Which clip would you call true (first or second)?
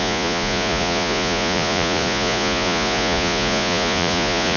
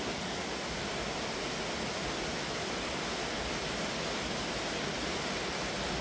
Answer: second